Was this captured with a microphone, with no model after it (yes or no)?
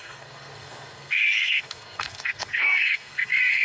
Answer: no